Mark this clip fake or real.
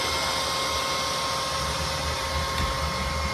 real